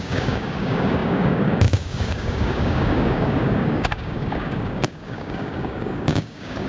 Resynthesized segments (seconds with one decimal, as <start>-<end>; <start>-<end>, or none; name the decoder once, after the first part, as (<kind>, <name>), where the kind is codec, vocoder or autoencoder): 0.0-6.7 (codec, DAC)